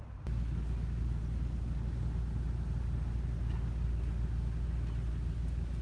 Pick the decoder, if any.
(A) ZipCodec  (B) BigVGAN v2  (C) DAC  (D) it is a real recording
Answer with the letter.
D